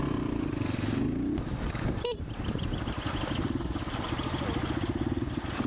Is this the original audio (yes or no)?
yes